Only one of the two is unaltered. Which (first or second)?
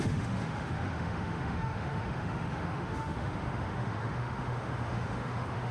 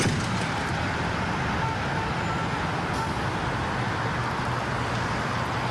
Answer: second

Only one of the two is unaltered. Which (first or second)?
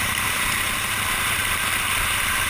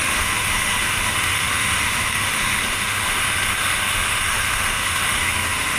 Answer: first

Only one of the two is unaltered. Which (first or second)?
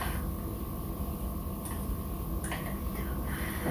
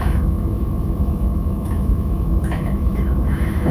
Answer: first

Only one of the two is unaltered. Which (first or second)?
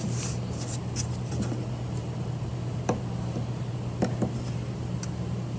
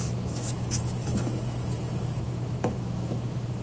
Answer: first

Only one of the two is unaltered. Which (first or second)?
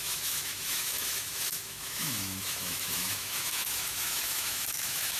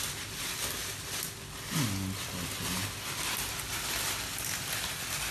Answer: second